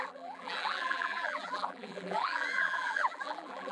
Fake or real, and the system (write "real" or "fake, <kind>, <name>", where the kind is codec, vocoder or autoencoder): fake, vocoder, BigVGAN v2